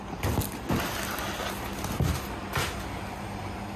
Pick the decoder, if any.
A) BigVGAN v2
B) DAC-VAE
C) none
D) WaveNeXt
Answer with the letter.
C